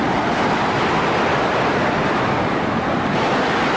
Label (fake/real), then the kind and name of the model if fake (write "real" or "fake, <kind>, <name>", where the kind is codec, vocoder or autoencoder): real